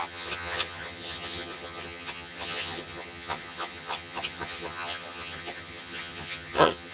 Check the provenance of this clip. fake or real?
fake